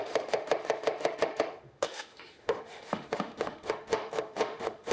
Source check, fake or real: fake